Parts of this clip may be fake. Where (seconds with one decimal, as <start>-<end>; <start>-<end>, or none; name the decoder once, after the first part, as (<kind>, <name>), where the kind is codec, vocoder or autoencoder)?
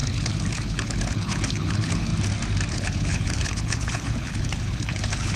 0.0-2.1 (codec, HILCodec); 2.7-5.4